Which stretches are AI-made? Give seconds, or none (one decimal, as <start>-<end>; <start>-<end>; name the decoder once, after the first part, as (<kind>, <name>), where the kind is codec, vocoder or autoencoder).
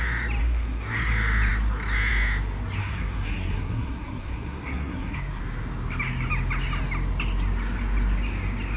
0.4-1.1 (codec, SNAC); 2.8-5.4